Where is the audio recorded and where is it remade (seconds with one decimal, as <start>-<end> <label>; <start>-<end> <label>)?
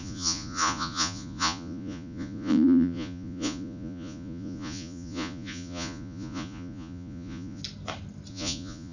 0.0-7.6 remade; 7.6-8.3 recorded; 8.3-8.9 remade